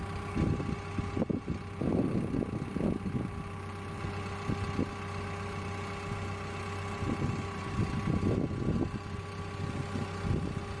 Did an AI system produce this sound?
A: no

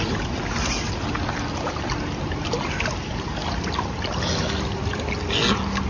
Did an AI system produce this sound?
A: no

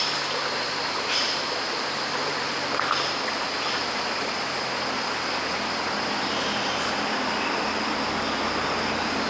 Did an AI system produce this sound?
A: no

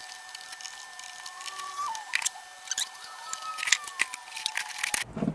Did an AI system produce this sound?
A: no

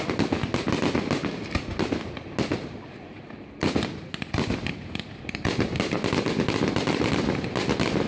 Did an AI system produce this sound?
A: no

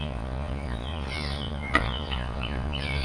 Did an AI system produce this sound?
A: yes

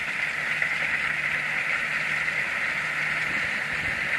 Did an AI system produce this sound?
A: no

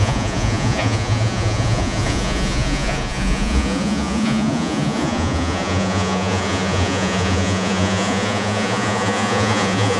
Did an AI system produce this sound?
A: yes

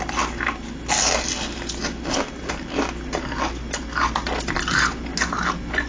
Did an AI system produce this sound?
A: no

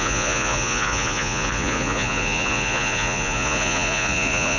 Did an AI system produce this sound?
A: yes